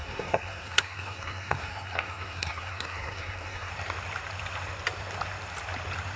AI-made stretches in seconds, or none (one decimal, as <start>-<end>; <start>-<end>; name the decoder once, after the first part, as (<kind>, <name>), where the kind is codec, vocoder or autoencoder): 0.0-3.7 (codec, SNAC)